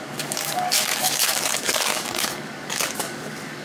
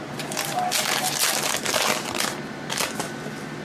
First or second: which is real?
second